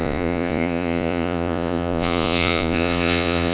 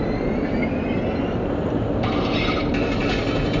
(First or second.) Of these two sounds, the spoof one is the first